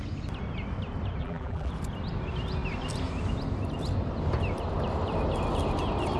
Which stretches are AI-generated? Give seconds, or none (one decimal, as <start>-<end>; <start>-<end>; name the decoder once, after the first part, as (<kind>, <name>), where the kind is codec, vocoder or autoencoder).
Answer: 1.2-1.7 (vocoder, BigVGAN v2)

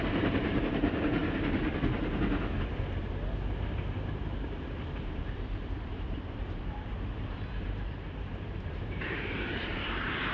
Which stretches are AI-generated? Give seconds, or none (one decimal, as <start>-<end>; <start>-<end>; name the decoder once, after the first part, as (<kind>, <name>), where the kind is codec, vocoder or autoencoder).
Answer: 0.0-1.2 (vocoder, BigVGAN v2); 5.0-10.3

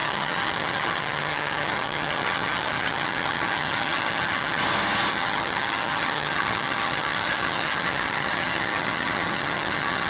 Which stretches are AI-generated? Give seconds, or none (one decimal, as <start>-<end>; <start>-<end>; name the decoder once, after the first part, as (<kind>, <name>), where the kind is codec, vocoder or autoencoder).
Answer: 0.0-4.6 (vocoder, HiFi-GAN); 5.1-10.1

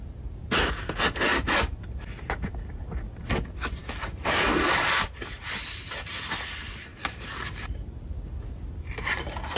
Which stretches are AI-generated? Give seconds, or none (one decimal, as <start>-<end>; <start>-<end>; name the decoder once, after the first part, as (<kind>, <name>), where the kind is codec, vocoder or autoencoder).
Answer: 3.8-5.2 (vocoder, BigVGAN v2)

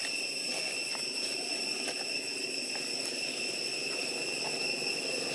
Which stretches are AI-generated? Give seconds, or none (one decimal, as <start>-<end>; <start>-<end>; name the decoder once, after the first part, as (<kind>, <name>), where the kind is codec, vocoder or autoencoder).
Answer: none

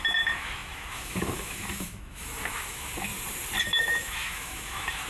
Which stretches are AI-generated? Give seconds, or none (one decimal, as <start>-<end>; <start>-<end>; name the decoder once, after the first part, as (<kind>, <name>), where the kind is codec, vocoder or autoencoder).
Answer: 0.0-3.1 (autoencoder, DAC-VAE); 3.6-5.1

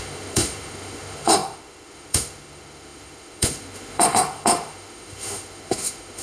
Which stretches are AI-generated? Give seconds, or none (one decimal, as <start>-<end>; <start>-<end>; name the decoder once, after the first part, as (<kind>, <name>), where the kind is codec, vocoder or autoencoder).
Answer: 0.0-6.2 (autoencoder, DAC-VAE)

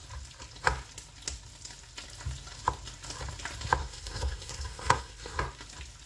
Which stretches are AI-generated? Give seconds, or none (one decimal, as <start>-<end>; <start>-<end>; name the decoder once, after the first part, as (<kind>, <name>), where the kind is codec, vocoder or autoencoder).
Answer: 3.8-5.4 (codec, SNAC)